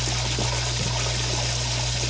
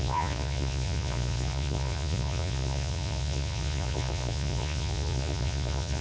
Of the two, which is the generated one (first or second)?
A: second